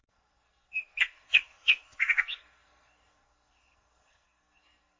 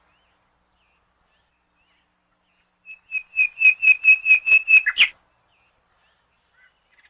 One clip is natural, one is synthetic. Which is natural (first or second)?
second